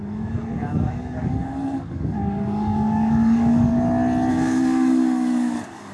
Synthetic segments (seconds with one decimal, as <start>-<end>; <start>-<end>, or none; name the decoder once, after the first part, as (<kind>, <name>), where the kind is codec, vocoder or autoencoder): 0.0-3.7 (codec, DAC); 4.3-5.9